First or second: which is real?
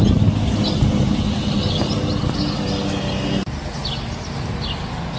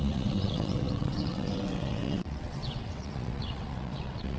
first